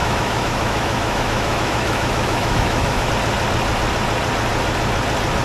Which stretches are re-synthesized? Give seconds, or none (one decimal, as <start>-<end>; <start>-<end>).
0.0-3.1